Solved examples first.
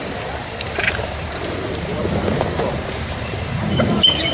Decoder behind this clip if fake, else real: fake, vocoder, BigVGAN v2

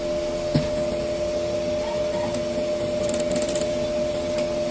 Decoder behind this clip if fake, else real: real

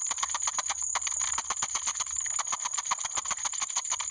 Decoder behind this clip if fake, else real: real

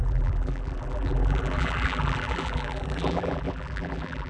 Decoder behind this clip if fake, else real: fake, vocoder, BigVGAN v2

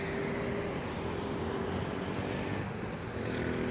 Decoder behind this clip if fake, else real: real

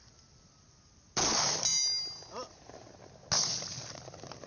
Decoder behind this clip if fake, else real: real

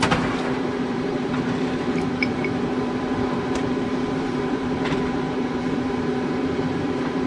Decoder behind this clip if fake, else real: fake, vocoder, BigVGAN v2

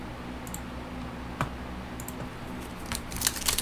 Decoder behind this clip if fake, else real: real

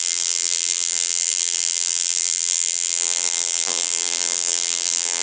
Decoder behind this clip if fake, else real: fake, vocoder, BigVGAN v2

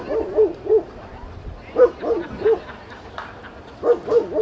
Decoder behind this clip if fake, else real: fake, vocoder, BigVGAN v2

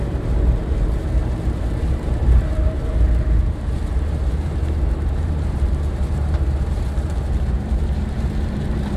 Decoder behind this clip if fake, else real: fake, vocoder, BigVGAN v2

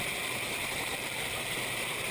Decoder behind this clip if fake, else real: fake, vocoder, BigVGAN v2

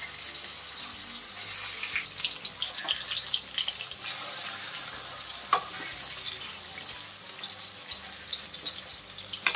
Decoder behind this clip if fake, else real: real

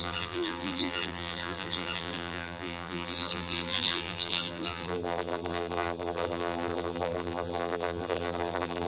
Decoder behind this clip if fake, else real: fake, vocoder, BigVGAN v2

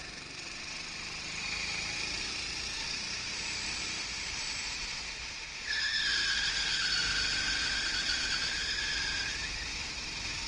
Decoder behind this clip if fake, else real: fake, vocoder, BigVGAN v2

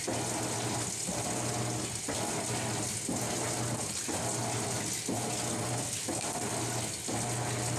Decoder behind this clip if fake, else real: real